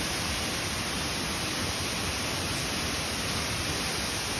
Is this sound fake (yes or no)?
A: no